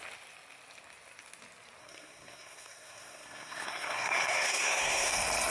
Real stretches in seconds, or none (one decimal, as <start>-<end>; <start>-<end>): 0.0-1.8; 5.1-5.5